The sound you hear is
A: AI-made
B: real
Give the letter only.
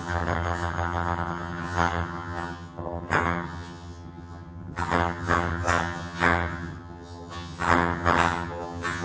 A